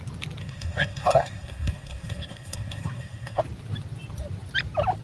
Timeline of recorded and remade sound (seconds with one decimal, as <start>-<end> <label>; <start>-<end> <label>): 0.0-0.4 recorded; 0.4-3.4 remade; 3.4-5.0 recorded